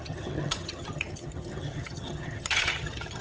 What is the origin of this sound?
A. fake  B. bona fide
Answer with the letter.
A